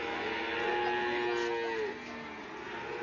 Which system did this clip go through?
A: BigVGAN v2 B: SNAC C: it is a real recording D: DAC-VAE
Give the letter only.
C